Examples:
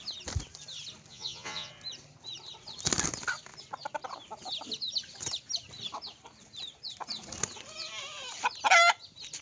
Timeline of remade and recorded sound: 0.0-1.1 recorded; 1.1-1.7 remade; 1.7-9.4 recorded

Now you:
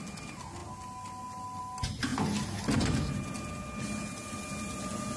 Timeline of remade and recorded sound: 0.0-5.2 recorded